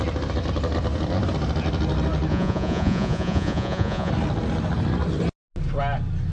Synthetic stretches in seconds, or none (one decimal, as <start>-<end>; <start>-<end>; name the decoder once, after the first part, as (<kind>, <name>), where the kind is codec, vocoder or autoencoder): 2.3-4.1 (vocoder, Vocos)